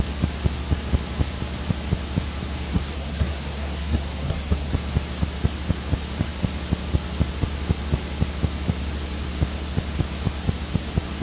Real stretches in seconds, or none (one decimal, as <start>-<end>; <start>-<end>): 0.0-2.7; 4.7-11.2